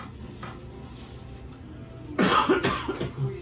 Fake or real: real